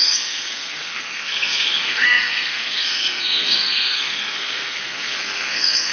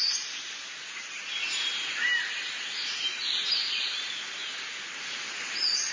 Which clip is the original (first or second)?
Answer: second